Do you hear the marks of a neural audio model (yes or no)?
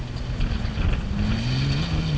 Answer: no